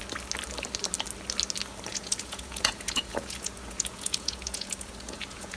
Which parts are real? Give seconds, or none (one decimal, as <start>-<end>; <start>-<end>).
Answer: 0.0-1.9